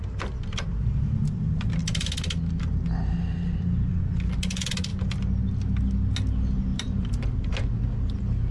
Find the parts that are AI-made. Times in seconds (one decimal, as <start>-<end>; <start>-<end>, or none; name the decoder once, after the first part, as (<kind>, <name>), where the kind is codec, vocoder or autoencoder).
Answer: 6.7-7.5 (vocoder, BigVGAN v2)